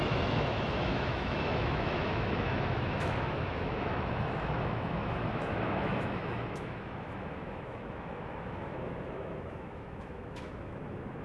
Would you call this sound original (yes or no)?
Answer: no